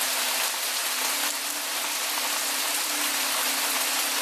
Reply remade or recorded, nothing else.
recorded